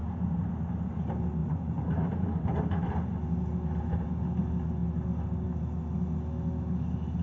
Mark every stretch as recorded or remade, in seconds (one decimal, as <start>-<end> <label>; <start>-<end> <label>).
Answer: 0.0-0.5 remade; 0.5-1.4 recorded; 1.4-2.9 remade; 2.9-7.2 recorded